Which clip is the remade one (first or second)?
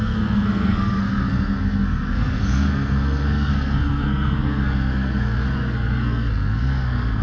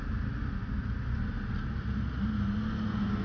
first